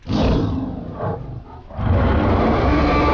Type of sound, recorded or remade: recorded